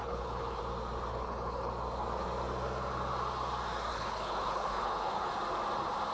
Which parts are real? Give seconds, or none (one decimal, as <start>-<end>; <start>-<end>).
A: 0.6-1.1; 1.7-3.9; 5.3-6.1